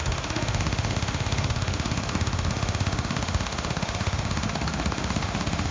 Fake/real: fake